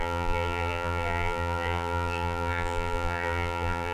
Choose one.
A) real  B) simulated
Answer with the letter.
B